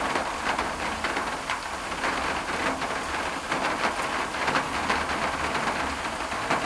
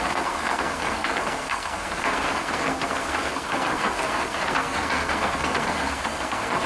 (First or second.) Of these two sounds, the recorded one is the first